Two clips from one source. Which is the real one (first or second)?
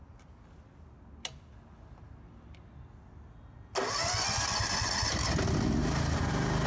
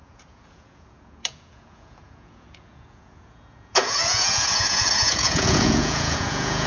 first